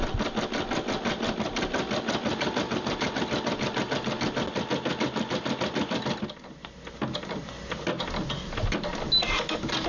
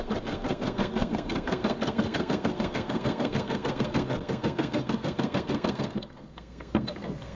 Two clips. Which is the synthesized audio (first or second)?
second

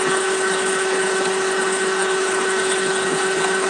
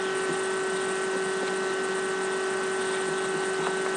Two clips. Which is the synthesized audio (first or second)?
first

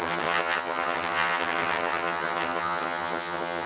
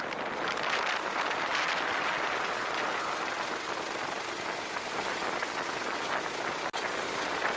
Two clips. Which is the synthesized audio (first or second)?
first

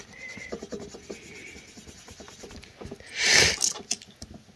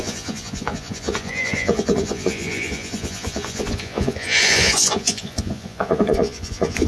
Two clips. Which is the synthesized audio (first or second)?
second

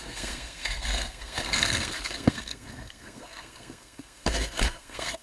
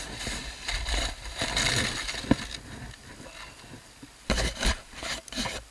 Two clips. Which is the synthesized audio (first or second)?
first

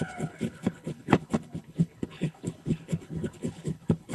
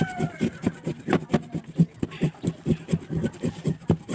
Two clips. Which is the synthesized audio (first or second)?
first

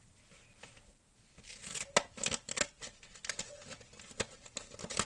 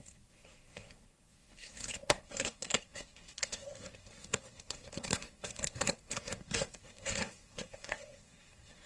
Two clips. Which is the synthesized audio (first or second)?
second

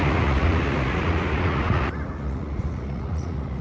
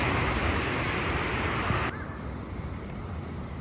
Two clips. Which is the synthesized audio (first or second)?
first